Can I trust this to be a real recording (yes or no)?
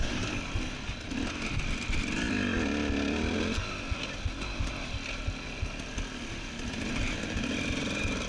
yes